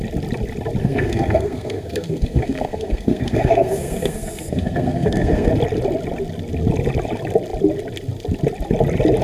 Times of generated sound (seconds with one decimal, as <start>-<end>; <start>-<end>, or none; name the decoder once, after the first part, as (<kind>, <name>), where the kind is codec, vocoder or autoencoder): 0.8-5.5 (codec, SNAC)